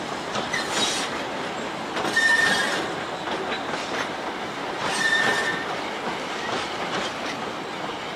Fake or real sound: real